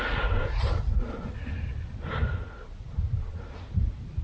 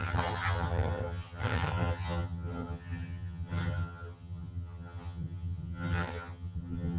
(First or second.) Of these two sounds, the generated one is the second